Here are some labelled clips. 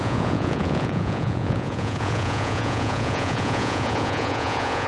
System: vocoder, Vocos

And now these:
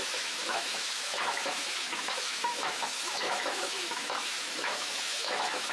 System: autoencoder, DAC-VAE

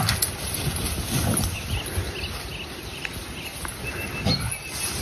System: none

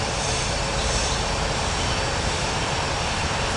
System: vocoder, BigVGAN v2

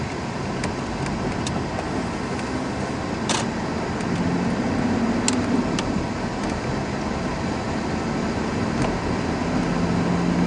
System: none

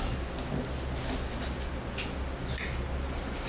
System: none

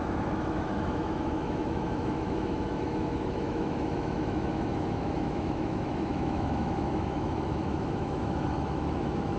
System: autoencoder, DAC-VAE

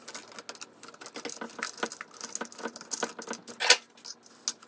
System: none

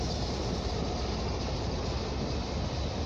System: none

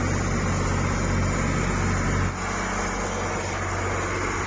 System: none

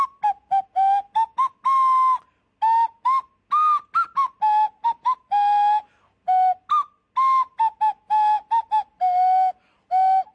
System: none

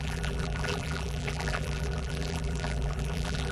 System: vocoder, BigVGAN v2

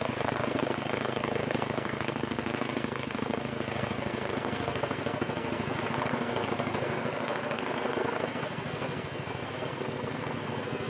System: codec, SNAC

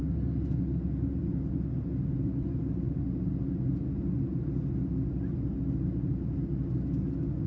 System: none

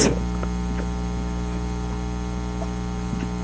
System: none